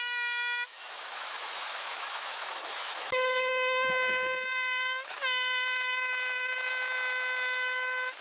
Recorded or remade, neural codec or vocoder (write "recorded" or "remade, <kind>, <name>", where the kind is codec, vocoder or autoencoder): remade, autoencoder, DAC-VAE